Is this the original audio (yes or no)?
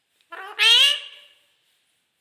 yes